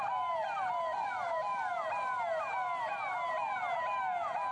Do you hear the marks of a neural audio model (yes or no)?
no